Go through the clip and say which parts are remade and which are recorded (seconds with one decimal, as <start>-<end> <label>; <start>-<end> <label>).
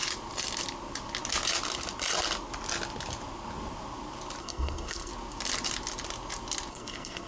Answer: 0.0-4.4 recorded; 4.4-5.1 remade; 5.1-6.7 recorded; 6.7-7.3 remade